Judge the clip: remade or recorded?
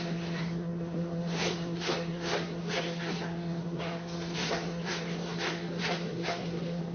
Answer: remade